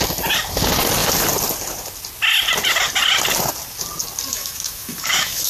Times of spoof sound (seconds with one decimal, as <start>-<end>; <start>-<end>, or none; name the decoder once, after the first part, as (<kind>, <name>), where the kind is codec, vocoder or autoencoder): 4.3-5.5 (autoencoder, DAC-VAE)